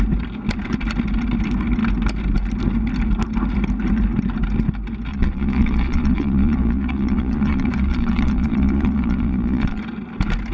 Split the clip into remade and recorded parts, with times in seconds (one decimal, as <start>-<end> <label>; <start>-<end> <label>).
0.0-5.1 recorded; 5.1-9.8 remade; 9.8-10.5 recorded